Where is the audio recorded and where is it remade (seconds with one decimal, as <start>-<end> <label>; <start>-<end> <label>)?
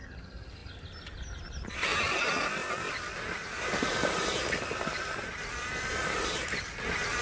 0.0-7.2 recorded